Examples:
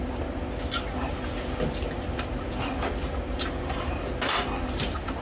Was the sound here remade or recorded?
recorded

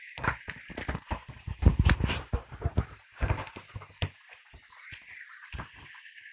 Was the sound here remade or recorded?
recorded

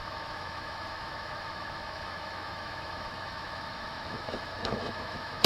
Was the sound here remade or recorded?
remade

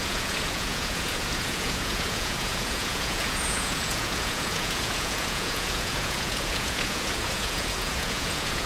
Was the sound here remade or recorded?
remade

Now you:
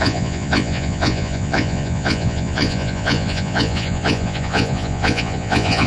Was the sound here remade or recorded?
remade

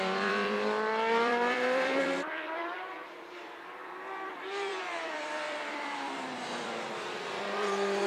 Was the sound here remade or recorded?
remade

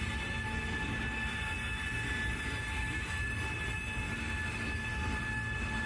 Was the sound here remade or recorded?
recorded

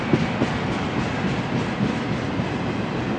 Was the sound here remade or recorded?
recorded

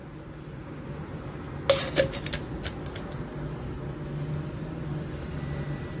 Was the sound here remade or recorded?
recorded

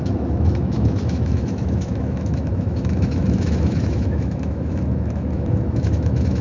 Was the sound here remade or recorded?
remade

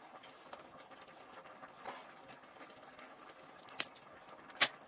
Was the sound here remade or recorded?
recorded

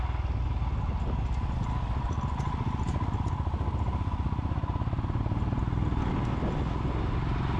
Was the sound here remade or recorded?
recorded